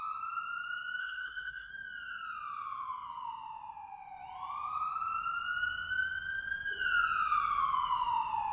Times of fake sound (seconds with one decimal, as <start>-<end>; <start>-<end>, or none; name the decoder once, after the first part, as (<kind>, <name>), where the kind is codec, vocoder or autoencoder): 1.0-1.7 (codec, SNAC)